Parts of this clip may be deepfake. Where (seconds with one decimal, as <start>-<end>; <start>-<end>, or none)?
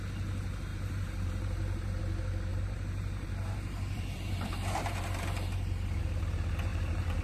0.7-2.0; 2.5-6.0; 6.7-7.2